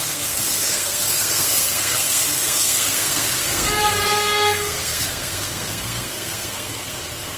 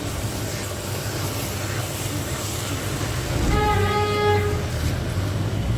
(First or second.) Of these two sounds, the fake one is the first